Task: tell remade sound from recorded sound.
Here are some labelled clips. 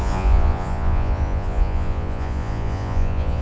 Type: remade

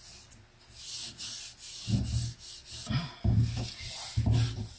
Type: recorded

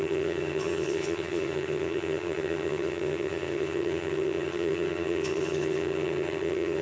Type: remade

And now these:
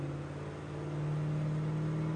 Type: recorded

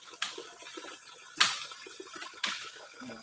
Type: recorded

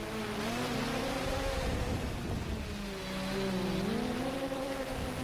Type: recorded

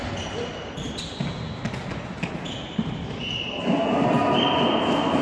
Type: recorded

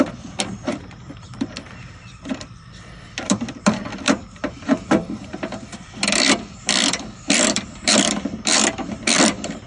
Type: remade